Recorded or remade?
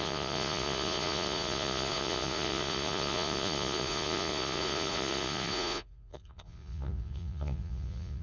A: remade